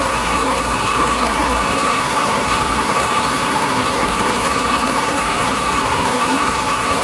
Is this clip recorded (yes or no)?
no